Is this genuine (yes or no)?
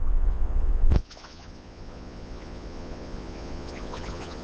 no